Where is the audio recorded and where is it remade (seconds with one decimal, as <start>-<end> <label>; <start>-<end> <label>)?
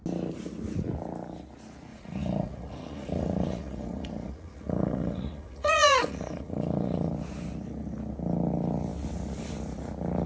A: 0.0-1.9 recorded; 1.9-7.1 remade; 7.1-10.3 recorded